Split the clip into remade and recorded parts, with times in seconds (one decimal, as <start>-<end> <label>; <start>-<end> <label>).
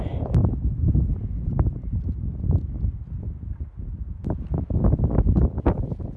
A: 0.0-6.2 recorded